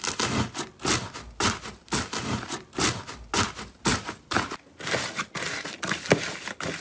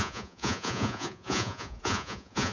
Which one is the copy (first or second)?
second